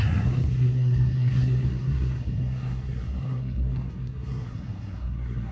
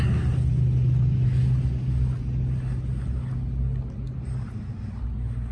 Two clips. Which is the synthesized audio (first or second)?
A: first